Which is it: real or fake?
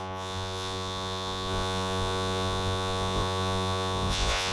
fake